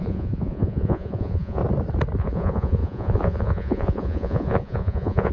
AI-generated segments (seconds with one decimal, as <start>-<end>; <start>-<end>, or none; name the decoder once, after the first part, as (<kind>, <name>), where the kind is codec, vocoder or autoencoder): 0.0-1.6 (vocoder, Vocos); 2.2-5.3